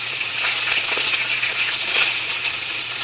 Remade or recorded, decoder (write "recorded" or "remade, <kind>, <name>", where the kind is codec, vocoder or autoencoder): remade, vocoder, Vocos